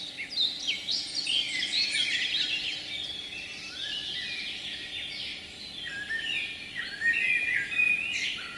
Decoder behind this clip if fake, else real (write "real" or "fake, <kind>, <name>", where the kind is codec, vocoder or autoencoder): real